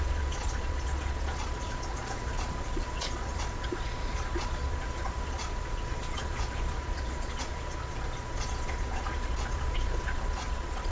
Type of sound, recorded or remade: remade